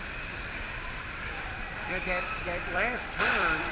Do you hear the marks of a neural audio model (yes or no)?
yes